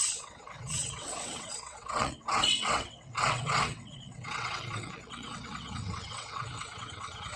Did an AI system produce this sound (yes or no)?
yes